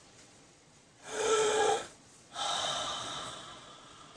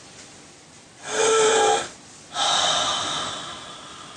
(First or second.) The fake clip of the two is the first